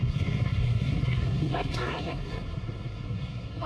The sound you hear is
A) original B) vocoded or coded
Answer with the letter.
B